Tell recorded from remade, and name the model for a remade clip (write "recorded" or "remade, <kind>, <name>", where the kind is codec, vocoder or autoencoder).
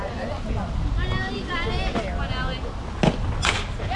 recorded